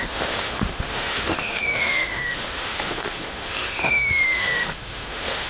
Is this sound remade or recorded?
remade